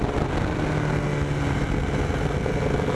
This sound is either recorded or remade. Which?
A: recorded